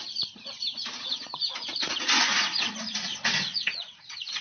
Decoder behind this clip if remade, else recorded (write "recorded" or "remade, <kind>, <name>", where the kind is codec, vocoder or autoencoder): remade, vocoder, Vocos